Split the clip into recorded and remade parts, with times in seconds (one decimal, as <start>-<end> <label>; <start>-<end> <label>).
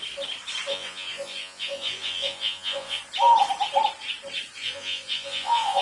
0.0-0.7 recorded; 0.7-3.0 remade; 3.0-4.6 recorded; 4.6-5.8 remade